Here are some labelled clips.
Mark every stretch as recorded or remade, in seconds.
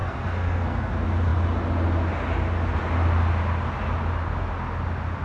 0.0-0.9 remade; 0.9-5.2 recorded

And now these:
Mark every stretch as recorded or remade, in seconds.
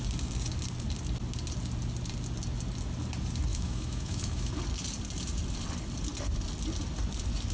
0.0-3.5 recorded; 3.5-4.5 remade; 4.5-7.5 recorded